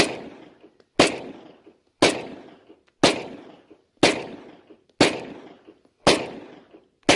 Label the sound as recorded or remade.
recorded